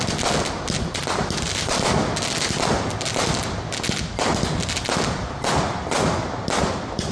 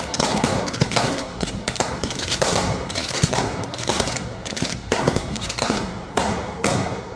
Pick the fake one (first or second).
second